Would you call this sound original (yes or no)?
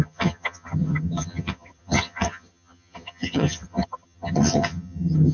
no